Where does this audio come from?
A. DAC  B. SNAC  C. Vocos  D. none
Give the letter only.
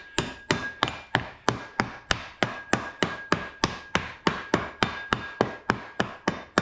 D